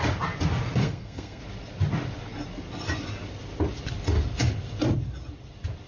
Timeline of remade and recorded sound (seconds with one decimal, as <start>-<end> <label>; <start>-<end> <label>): 0.0-0.8 recorded; 0.8-1.4 remade; 1.4-5.9 recorded